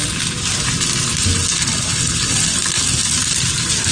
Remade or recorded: recorded